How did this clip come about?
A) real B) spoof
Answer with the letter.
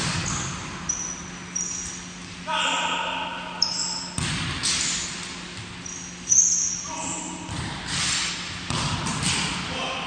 A